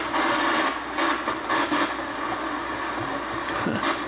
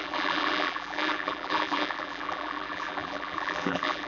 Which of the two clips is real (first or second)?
first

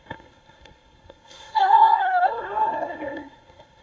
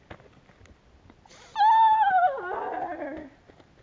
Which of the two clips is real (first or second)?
second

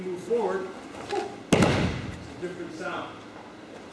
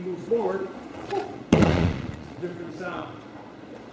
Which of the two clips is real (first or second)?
first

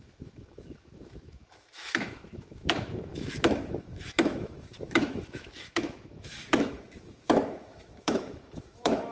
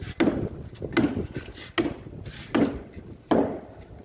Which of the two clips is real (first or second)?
second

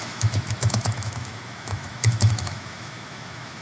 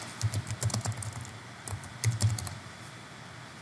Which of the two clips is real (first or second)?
second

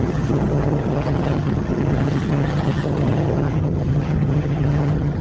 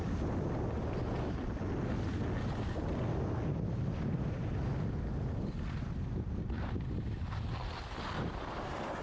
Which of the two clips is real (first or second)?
second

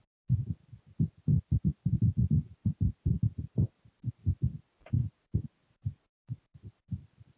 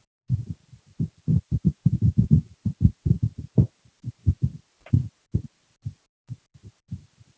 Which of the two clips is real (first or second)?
first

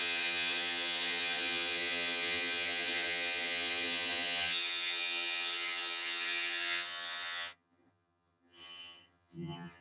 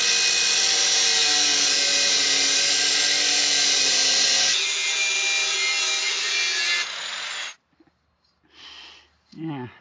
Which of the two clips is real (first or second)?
second